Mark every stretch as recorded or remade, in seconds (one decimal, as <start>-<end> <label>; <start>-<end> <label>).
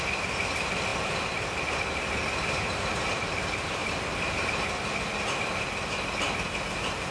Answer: 0.0-7.1 recorded